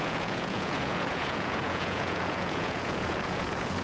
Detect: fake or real fake